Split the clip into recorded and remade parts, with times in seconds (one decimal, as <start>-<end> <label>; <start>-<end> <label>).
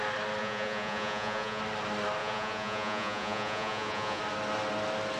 0.0-0.4 recorded; 0.4-1.6 remade; 1.6-2.2 recorded; 2.2-4.2 remade; 4.2-5.2 recorded